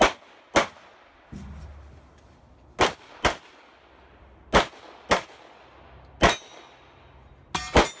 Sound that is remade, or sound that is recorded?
recorded